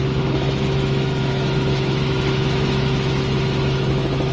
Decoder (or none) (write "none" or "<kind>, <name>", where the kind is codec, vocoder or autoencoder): autoencoder, DAC-VAE